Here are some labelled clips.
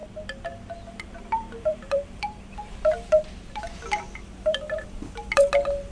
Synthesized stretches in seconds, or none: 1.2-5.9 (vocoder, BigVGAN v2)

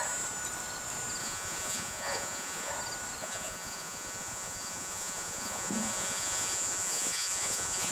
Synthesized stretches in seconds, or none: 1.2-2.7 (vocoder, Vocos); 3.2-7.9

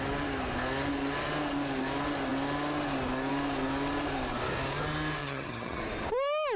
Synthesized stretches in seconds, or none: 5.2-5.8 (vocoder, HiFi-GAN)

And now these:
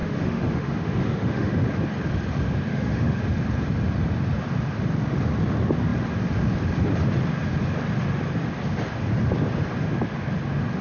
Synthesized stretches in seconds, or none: 0.0-1.5 (autoencoder, DAC-VAE); 2.7-3.2

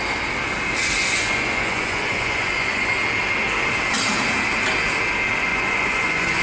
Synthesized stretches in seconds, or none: 1.0-2.9 (vocoder, Vocos); 5.5-6.4

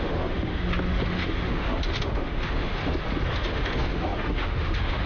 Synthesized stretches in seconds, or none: 0.0-0.6 (autoencoder, DAC-VAE); 1.1-2.8; 3.3-5.1

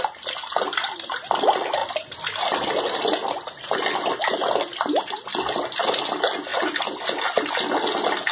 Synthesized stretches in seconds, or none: none